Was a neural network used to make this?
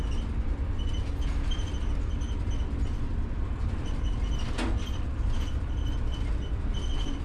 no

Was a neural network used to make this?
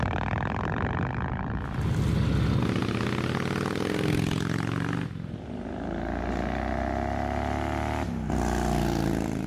no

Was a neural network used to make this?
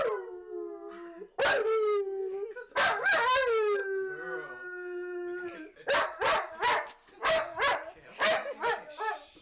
no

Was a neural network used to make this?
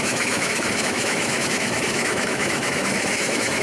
yes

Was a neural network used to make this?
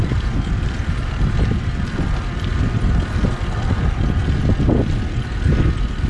no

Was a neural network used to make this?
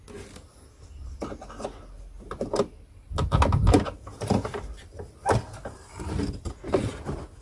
no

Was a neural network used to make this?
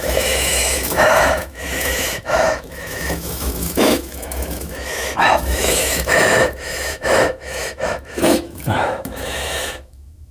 yes